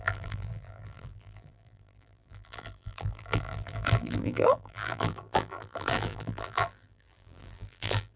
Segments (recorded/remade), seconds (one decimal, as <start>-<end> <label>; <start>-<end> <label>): 0.0-8.2 remade